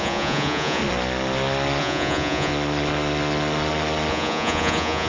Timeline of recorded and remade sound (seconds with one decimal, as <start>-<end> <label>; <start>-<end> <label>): 0.0-0.8 remade; 0.8-1.8 recorded; 1.8-2.5 remade; 2.5-4.1 recorded; 4.1-5.1 remade